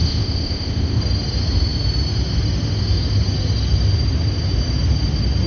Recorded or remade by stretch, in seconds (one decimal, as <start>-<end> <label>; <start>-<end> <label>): 0.0-1.0 remade; 1.0-5.5 recorded